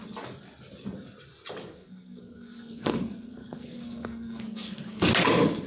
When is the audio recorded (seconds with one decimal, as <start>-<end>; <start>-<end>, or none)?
0.0-1.7; 5.1-5.7